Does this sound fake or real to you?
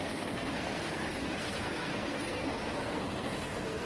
fake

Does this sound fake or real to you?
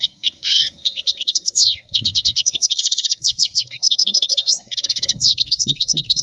fake